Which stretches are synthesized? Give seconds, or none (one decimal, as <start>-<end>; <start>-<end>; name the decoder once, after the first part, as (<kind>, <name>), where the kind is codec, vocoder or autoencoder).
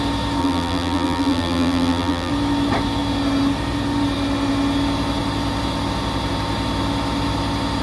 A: 0.4-2.3 (vocoder, BigVGAN v2)